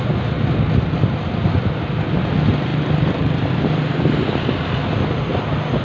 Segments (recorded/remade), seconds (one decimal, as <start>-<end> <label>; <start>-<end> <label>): 0.0-5.8 recorded